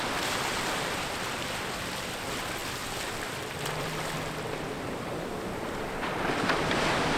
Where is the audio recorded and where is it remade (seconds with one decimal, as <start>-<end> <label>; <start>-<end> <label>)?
0.0-7.2 recorded